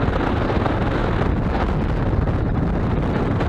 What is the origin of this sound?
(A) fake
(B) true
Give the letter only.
B